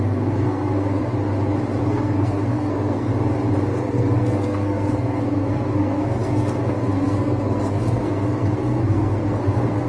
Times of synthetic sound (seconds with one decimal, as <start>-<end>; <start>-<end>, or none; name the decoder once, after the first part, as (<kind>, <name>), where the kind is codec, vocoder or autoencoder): 0.0-1.0 (codec, SNAC); 1.8-3.1; 3.7-9.9